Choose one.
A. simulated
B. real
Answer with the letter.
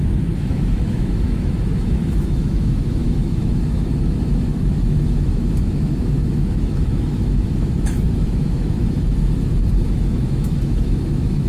A